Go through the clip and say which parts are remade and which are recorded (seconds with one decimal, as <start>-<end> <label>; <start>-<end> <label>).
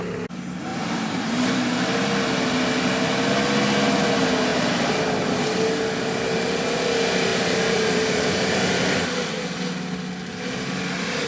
0.0-0.7 recorded; 0.7-1.5 remade; 1.5-4.5 recorded; 4.5-5.0 remade; 5.0-7.3 recorded; 7.3-8.8 remade; 8.8-11.3 recorded